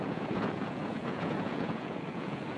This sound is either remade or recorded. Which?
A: remade